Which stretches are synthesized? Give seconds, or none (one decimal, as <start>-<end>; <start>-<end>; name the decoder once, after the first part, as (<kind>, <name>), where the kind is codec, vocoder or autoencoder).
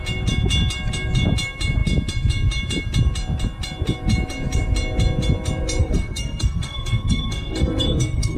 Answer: 5.8-8.4 (codec, SNAC)